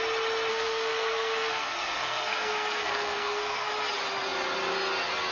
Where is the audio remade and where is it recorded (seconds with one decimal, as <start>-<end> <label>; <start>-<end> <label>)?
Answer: 0.0-0.5 recorded; 0.5-3.7 remade; 3.7-5.3 recorded